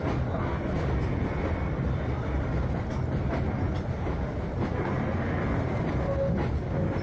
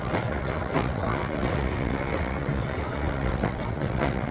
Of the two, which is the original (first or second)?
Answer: first